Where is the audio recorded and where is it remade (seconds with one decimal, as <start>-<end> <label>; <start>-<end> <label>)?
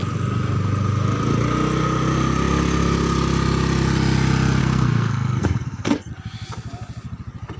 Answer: 0.0-4.6 recorded; 4.6-6.1 remade; 6.1-7.6 recorded